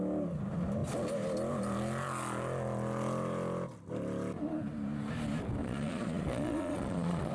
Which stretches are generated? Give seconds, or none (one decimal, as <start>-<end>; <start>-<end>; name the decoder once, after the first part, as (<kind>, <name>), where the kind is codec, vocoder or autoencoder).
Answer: 5.6-7.3 (vocoder, Vocos)